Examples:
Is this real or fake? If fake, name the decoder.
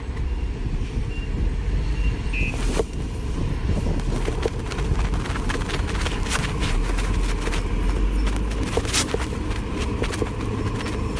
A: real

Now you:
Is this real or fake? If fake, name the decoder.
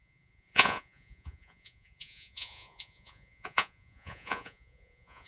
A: fake, vocoder, Vocos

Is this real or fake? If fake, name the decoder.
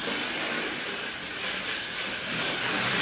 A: real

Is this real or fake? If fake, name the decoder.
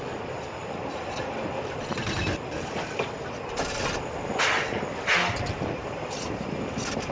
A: real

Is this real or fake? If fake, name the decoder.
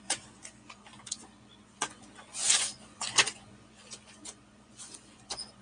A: fake, vocoder, Vocos